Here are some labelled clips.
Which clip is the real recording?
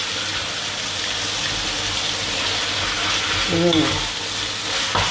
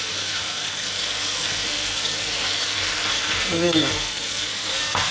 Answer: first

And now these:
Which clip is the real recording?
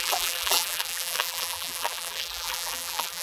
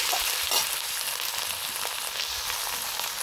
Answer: second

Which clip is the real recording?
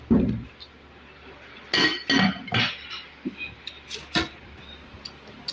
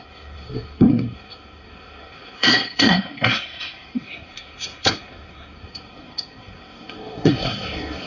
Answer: first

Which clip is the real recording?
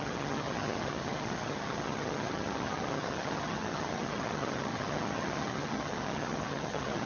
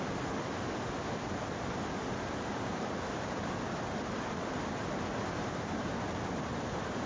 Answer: second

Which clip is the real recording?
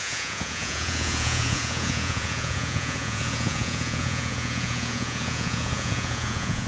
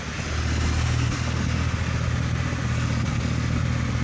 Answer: second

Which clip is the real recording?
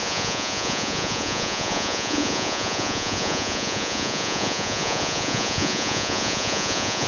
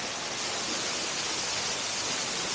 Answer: second